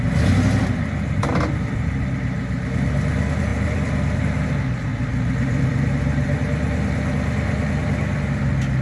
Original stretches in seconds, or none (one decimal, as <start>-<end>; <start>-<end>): 0.0-3.5; 4.2-4.9; 6.4-8.8